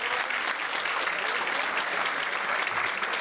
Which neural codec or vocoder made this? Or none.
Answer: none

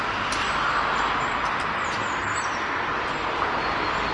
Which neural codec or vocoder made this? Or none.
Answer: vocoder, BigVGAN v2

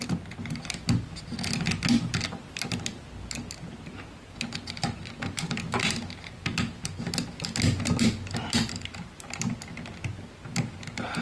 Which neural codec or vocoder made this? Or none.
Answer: none